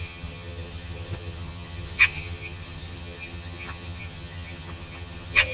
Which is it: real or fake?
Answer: fake